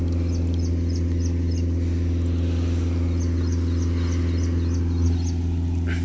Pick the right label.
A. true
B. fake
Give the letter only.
A